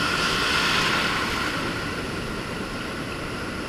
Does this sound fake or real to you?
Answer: real